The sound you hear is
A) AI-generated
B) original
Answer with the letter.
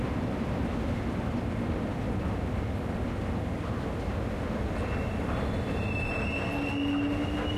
B